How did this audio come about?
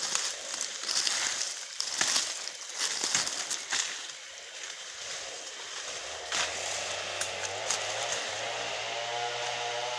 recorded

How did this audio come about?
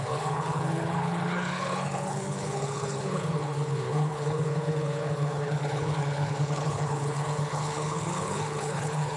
remade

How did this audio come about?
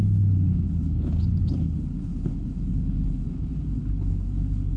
remade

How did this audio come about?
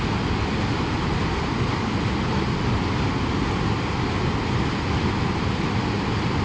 recorded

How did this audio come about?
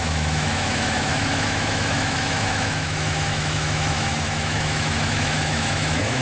remade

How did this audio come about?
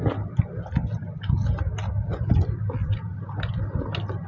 recorded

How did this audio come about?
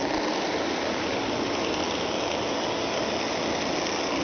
recorded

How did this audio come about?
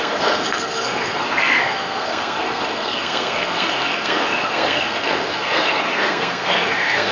remade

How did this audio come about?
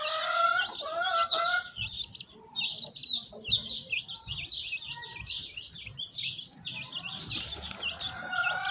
recorded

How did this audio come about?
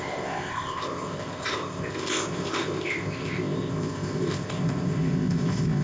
remade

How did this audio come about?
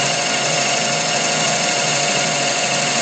remade